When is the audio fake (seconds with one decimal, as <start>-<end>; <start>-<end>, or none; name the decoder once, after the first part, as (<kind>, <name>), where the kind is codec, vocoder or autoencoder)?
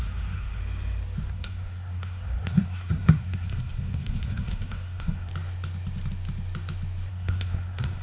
0.0-0.6 (codec, SNAC); 1.3-5.3; 7.1-8.0